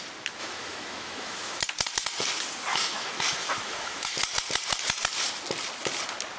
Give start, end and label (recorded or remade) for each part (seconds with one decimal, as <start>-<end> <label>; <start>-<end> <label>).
0.0-0.4 recorded; 0.4-1.6 remade; 1.6-2.7 recorded; 2.7-4.2 remade; 4.2-6.4 recorded